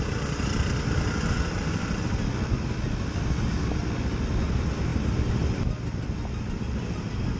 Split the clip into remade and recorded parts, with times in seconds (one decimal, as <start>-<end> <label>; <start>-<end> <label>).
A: 0.0-7.4 recorded